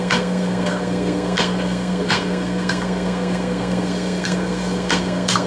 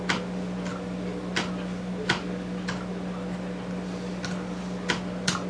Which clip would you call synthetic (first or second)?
first